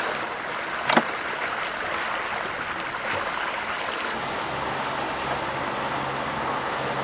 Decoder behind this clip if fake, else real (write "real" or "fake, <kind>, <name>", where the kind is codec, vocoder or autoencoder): real